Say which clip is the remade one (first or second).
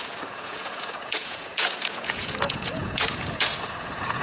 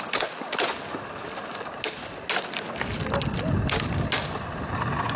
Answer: first